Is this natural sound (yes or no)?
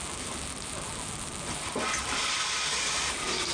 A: no